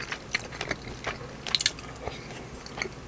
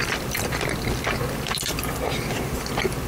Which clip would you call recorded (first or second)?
first